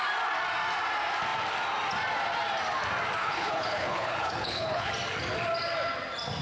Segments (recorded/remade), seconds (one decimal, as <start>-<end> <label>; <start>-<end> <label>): 0.0-3.2 recorded; 3.2-4.9 remade; 4.9-6.4 recorded

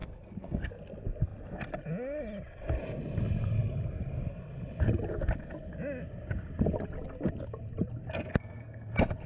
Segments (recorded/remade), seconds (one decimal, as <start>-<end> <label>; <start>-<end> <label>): 0.0-0.7 remade; 0.7-8.3 recorded; 8.3-8.9 remade; 8.9-9.3 recorded